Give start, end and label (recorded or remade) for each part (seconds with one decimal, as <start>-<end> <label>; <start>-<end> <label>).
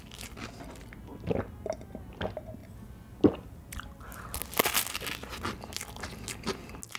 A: 0.0-7.0 recorded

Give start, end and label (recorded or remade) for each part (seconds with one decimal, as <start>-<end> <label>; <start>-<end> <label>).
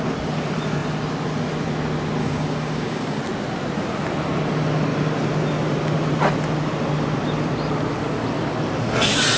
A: 0.0-2.2 recorded; 2.2-3.2 remade; 3.2-9.4 recorded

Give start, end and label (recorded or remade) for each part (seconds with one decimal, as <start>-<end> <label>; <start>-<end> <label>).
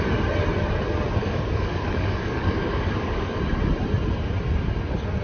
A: 0.0-1.2 recorded; 1.2-3.4 remade; 3.4-5.2 recorded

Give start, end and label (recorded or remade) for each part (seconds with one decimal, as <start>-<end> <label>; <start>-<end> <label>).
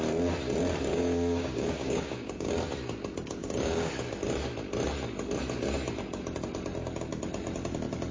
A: 0.0-0.9 recorded; 0.9-2.5 remade; 2.5-3.4 recorded; 3.4-3.9 remade; 3.9-8.1 recorded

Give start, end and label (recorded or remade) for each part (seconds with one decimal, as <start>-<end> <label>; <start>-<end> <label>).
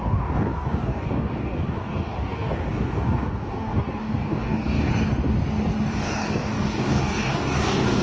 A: 0.0-4.9 remade; 4.9-5.9 recorded; 5.9-8.0 remade